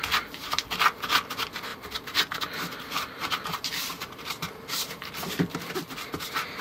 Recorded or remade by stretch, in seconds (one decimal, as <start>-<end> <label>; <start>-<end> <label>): 0.0-1.7 recorded; 1.7-5.7 remade; 5.7-6.6 recorded